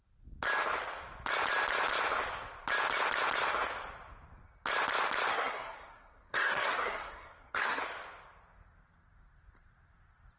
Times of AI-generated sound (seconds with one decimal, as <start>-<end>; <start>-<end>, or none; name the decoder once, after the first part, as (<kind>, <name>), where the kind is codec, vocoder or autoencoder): 5.3-7.8 (codec, SNAC)